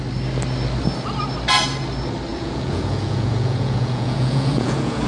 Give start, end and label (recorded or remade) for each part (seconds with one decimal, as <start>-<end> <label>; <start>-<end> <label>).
0.0-2.3 recorded; 2.3-5.1 remade